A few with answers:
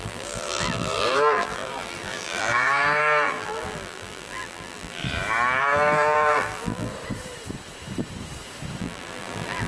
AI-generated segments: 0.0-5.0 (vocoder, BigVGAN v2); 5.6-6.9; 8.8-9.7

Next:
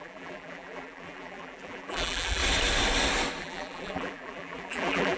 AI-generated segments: 0.0-2.4 (vocoder, BigVGAN v2); 3.4-5.2

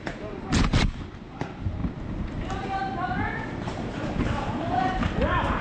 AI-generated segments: 0.0-5.6 (vocoder, BigVGAN v2)

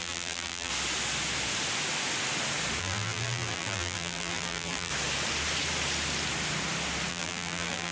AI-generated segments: 0.0-0.7 (vocoder, BigVGAN v2); 2.8-4.9; 7.1-7.9

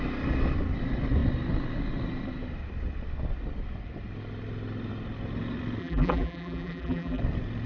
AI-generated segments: 5.8-7.2 (vocoder, BigVGAN v2)